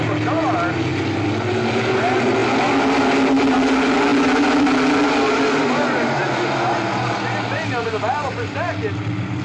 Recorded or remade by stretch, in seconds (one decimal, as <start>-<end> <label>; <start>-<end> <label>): 0.0-9.4 recorded